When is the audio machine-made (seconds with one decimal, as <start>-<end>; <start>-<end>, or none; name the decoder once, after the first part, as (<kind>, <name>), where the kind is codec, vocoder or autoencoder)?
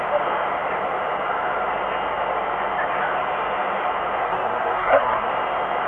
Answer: 4.2-5.3 (codec, SNAC)